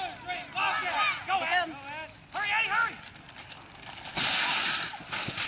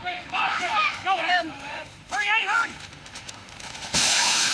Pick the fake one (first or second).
second